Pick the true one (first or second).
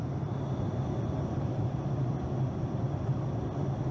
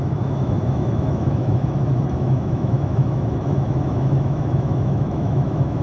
first